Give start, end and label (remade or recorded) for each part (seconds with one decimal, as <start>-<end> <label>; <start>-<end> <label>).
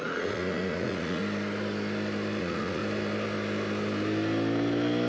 0.0-1.2 remade; 1.2-2.4 recorded; 2.4-2.8 remade; 2.8-5.1 recorded